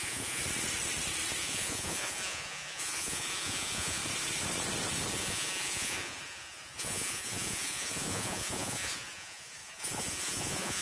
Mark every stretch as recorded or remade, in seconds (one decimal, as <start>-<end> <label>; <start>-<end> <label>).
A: 0.0-0.4 remade; 0.4-1.4 recorded; 1.4-4.0 remade; 4.0-5.1 recorded; 5.1-10.8 remade